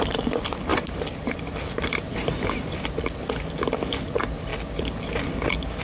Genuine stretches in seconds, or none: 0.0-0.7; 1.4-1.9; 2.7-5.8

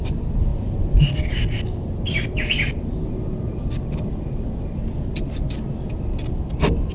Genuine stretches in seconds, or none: 0.0-6.9

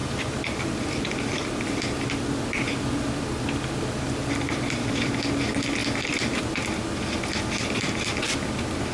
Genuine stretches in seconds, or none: 4.5-5.8; 6.4-8.9

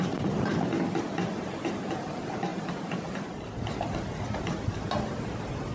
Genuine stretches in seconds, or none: 0.0-5.7

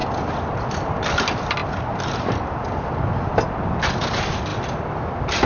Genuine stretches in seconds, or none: 0.0-5.5

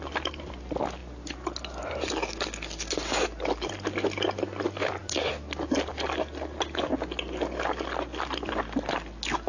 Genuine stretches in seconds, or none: 0.0-9.5

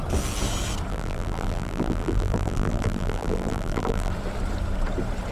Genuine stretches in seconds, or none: 0.0-0.9; 4.1-5.3

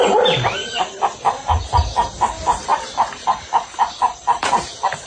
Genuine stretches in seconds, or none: 0.6-1.2